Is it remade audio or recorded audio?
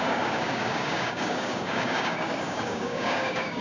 remade